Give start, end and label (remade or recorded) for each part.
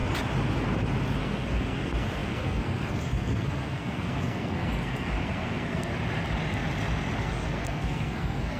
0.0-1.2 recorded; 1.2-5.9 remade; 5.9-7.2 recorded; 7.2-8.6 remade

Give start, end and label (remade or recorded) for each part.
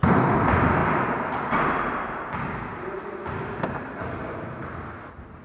0.0-5.4 recorded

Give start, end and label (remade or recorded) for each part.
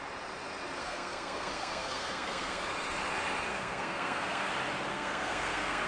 0.0-0.8 recorded; 0.8-2.6 remade; 2.6-3.5 recorded; 3.5-4.5 remade; 4.5-4.9 recorded; 4.9-5.9 remade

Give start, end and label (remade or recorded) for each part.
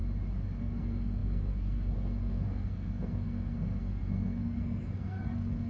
0.0-0.6 recorded; 0.6-5.7 remade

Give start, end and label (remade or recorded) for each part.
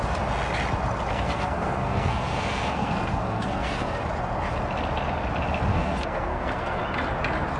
0.0-1.1 recorded; 1.1-4.0 remade; 4.0-5.7 recorded; 5.7-6.8 remade; 6.8-7.6 recorded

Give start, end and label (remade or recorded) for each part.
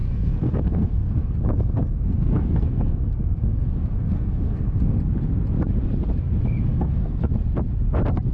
0.0-5.0 remade; 5.0-6.7 recorded; 6.7-7.3 remade; 7.3-8.3 recorded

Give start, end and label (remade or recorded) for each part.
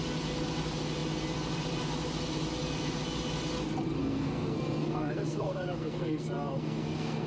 0.0-4.0 recorded; 4.0-7.3 remade